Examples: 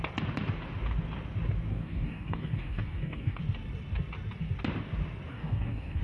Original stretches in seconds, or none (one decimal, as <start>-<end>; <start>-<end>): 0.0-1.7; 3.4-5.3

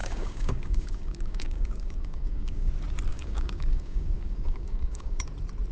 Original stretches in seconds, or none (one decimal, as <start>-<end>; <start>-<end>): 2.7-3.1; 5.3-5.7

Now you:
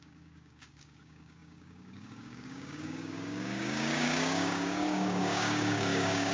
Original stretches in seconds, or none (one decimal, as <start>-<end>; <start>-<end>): none

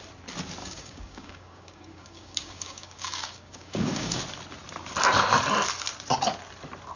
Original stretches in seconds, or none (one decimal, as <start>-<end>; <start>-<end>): 0.0-0.6; 4.2-7.0

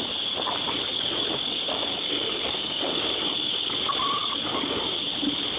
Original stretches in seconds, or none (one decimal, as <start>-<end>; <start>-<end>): 0.0-0.9; 3.8-4.2; 4.8-5.6